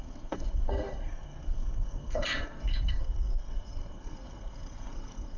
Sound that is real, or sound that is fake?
fake